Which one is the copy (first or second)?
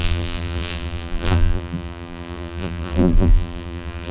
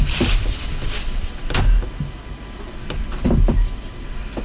first